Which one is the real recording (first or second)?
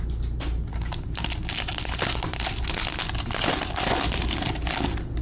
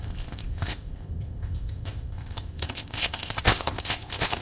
first